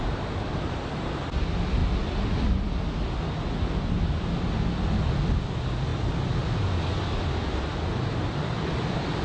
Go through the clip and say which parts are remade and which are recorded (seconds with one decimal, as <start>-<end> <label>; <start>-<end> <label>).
0.0-9.2 recorded